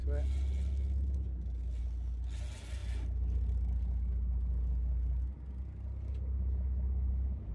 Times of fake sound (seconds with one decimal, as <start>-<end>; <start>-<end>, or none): none